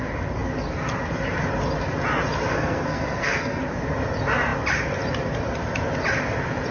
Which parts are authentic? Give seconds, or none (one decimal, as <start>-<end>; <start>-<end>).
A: 0.0-2.5; 3.6-6.7